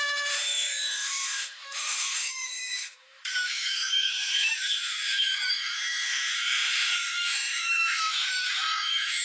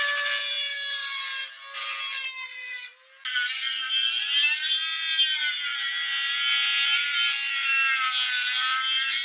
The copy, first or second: first